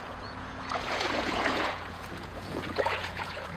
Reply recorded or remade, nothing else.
remade